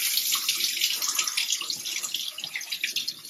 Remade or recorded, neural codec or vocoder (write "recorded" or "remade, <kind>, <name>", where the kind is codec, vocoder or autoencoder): recorded